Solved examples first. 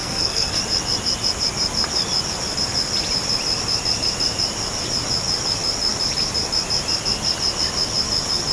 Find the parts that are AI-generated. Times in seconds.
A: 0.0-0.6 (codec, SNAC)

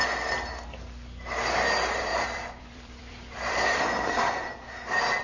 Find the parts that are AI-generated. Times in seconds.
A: 2.1-3.8 (vocoder, BigVGAN v2)

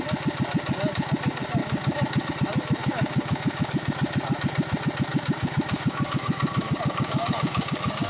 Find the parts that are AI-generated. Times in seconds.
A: 1.6-2.3 (codec, DAC); 2.8-3.9; 5.1-8.1

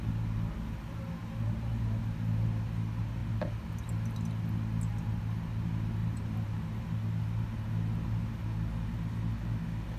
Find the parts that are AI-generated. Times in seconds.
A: 1.2-2.0 (vocoder, BigVGAN v2); 6.0-6.8